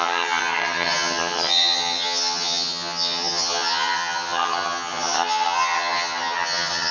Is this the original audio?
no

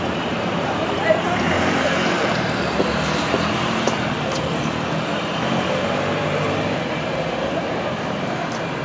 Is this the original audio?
no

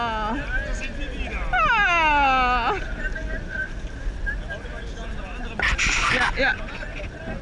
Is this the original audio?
yes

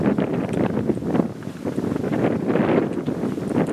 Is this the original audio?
yes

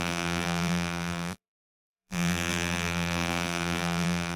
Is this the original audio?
no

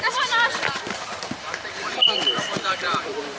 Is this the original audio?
no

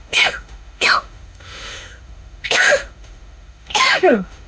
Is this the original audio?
no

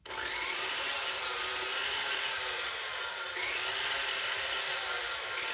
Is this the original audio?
yes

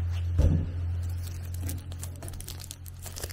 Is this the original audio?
yes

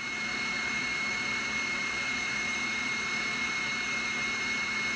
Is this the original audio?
no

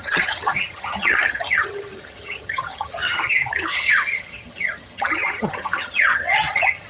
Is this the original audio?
no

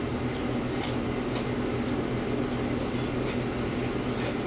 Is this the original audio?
yes